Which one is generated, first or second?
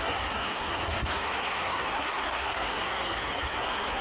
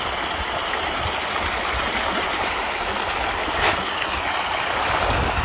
first